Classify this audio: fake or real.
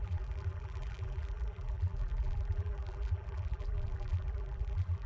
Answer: fake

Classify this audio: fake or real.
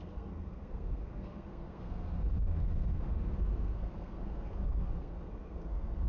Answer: fake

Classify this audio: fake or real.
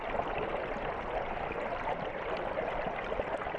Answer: real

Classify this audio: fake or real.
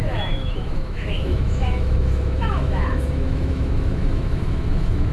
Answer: fake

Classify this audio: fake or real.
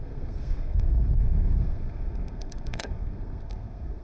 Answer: fake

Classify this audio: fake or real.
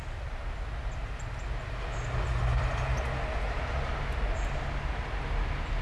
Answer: real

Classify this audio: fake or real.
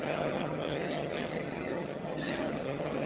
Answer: fake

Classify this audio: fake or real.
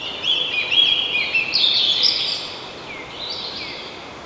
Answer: real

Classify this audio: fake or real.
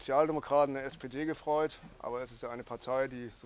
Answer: real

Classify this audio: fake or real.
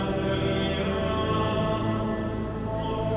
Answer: real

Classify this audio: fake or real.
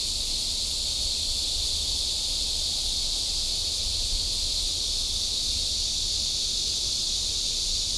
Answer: real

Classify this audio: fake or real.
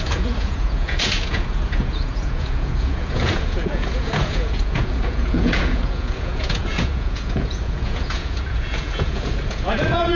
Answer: fake